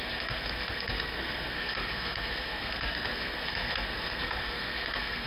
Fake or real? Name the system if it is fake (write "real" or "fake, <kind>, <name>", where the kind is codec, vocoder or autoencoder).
fake, codec, SNAC